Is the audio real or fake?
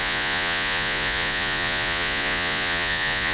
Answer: fake